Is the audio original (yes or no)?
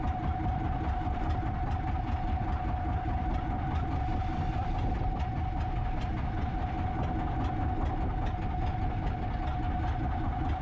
yes